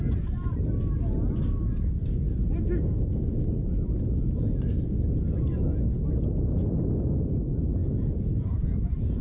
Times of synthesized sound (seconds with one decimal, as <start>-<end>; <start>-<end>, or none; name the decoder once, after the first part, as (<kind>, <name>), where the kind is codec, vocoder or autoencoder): 7.8-9.2 (vocoder, Vocos)